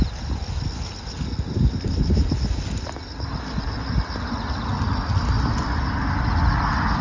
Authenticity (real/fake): real